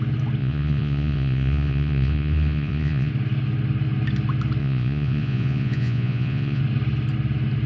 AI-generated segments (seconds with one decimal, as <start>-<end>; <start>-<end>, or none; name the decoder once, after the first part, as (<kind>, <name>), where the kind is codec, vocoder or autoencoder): 0.4-3.1 (vocoder, Vocos); 4.6-6.6